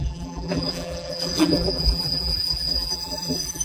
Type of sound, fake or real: fake